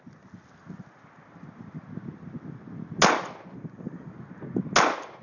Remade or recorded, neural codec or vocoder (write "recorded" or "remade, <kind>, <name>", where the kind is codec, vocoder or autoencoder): recorded